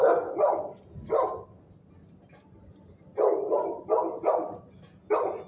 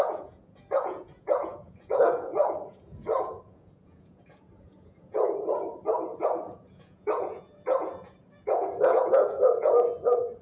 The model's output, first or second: second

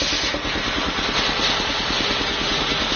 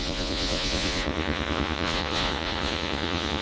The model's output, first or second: second